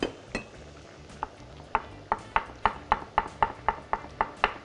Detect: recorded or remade recorded